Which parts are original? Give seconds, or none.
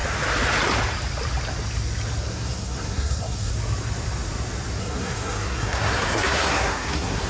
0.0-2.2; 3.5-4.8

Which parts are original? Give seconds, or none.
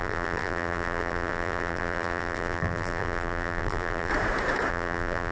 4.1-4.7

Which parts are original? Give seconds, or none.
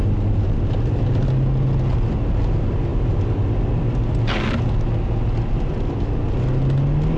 0.0-7.2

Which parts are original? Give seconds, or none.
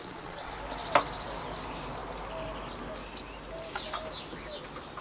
0.5-5.0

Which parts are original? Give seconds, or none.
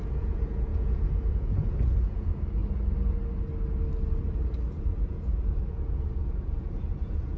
2.6-4.7